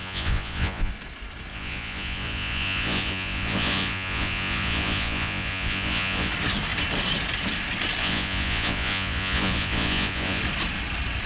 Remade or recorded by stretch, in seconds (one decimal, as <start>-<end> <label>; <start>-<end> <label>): 0.0-0.9 remade; 0.9-1.5 recorded; 1.5-6.3 remade; 6.3-8.0 recorded; 8.0-10.4 remade; 10.4-11.3 recorded